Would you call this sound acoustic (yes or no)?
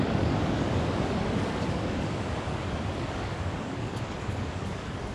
no